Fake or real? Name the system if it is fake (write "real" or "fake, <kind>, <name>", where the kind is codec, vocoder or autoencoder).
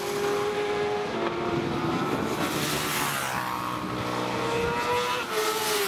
real